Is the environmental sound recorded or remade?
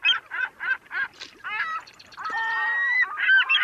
remade